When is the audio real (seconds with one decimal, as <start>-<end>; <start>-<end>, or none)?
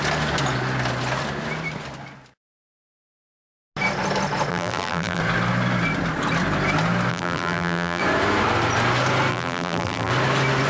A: 0.0-4.5; 5.2-7.1; 8.0-9.3; 10.1-10.7